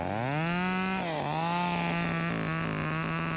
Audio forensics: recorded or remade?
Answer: recorded